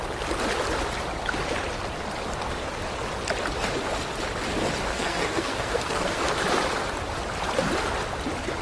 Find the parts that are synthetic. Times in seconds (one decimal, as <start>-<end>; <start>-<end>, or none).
4.9-6.2